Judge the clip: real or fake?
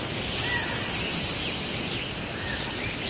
real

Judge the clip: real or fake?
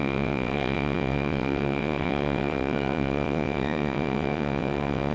fake